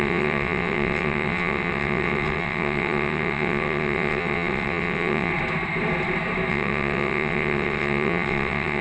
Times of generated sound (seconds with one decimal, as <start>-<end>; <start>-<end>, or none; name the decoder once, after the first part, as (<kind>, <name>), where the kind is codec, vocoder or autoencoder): 0.0-5.3 (vocoder, WaveNeXt); 6.5-8.8